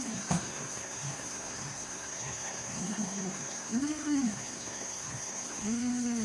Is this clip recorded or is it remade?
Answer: remade